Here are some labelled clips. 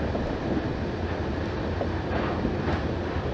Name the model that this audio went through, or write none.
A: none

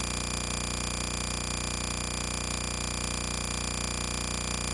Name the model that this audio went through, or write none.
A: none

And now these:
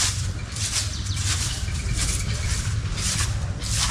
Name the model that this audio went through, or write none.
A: vocoder, BigVGAN v2